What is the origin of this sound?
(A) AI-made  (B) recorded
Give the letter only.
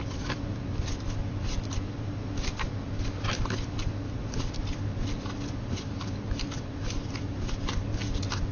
A